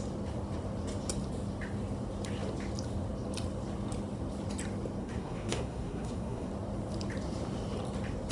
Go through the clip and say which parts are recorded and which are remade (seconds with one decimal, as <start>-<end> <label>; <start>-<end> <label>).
0.0-5.0 recorded; 5.0-6.5 remade; 6.5-8.3 recorded